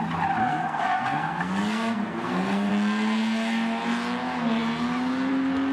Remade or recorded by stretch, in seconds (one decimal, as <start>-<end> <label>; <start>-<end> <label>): 0.0-0.4 recorded; 0.4-2.7 remade; 2.7-5.7 recorded

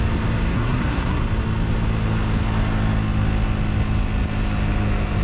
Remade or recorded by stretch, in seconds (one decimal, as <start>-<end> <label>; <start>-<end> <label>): 0.0-0.5 recorded; 0.5-1.2 remade; 1.2-5.2 recorded